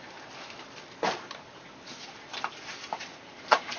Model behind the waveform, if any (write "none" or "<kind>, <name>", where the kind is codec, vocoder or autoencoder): none